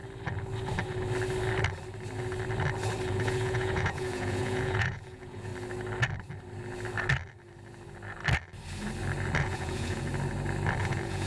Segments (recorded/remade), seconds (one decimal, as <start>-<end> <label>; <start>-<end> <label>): 0.0-3.1 recorded; 3.1-5.5 remade; 5.5-9.4 recorded; 9.4-10.1 remade; 10.1-10.8 recorded; 10.8-11.3 remade